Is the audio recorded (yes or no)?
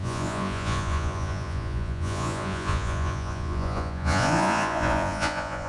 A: no